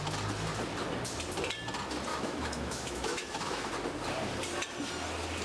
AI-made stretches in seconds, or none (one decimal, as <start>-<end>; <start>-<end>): 2.1-3.7